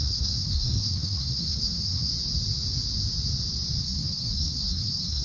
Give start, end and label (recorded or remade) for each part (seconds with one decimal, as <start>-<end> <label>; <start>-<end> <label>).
0.0-2.1 remade; 2.1-3.8 recorded; 3.8-5.2 remade